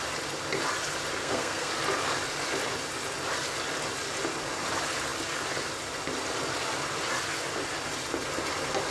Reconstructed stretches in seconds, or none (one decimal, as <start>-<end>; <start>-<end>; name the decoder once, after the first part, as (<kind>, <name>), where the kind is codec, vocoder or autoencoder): 1.2-1.7 (codec, SNAC)